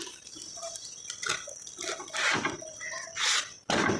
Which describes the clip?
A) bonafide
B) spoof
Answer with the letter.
A